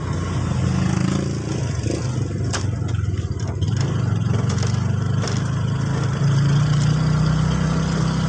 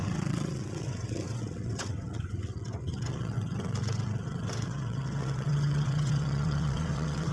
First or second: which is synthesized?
second